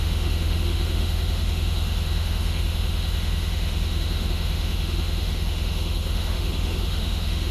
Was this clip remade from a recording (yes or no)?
yes